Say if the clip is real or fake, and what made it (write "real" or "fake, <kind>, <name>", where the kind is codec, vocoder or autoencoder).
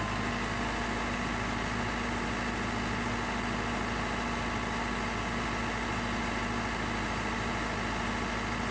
real